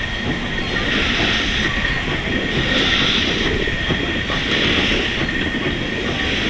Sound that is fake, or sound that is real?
real